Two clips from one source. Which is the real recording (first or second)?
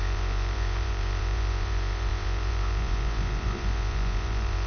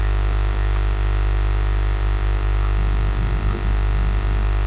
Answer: second